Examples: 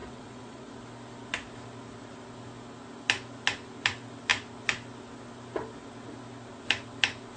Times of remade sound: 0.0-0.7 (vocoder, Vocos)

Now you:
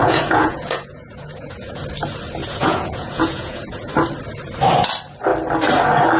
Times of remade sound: 0.0-1.8 (vocoder, Vocos); 2.4-3.9

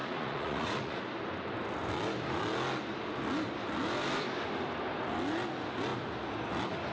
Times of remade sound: 0.0-1.0 (vocoder, Vocos)

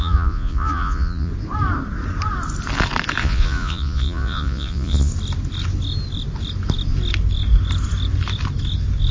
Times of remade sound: 0.0-1.3 (vocoder, Vocos); 3.2-5.1

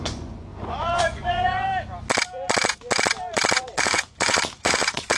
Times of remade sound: 0.0-1.7 (vocoder, Vocos); 3.6-5.2

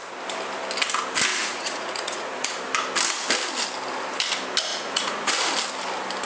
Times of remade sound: 1.3-2.5 (vocoder, Vocos); 4.7-5.3

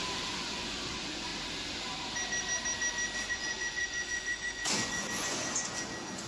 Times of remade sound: 0.0-1.3 (vocoder, Vocos); 3.3-6.3